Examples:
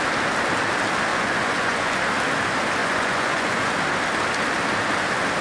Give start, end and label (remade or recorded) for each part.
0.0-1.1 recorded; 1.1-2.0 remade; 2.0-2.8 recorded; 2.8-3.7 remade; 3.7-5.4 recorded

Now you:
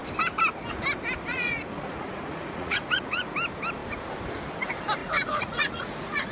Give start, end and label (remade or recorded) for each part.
0.0-1.3 recorded; 1.3-3.3 remade; 3.3-5.0 recorded; 5.0-6.3 remade

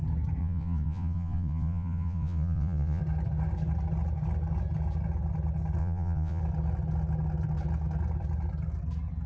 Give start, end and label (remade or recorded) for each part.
0.0-0.4 recorded; 0.4-3.0 remade; 3.0-5.8 recorded; 5.8-6.4 remade; 6.4-9.3 recorded